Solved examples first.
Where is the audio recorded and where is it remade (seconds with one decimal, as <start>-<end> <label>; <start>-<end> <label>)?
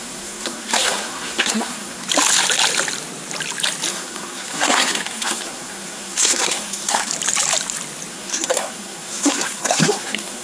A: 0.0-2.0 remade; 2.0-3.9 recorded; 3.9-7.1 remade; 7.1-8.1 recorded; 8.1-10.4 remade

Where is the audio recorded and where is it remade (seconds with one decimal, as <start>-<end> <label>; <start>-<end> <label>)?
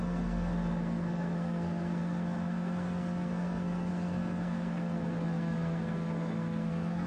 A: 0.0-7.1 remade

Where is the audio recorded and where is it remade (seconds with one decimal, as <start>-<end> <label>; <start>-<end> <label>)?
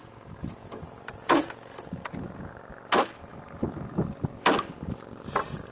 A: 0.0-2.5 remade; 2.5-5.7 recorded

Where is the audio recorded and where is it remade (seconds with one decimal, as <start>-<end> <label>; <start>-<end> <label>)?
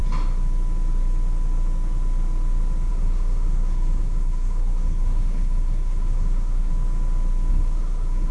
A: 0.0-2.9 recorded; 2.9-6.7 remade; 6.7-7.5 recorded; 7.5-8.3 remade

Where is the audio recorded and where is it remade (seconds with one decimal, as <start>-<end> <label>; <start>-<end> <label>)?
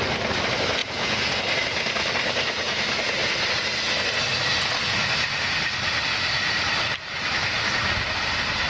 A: 0.0-0.8 recorded; 0.8-1.4 remade; 1.4-8.7 recorded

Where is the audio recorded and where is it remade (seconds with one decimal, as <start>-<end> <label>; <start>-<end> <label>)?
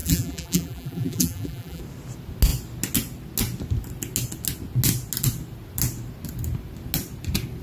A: 0.0-1.8 remade; 1.8-7.6 recorded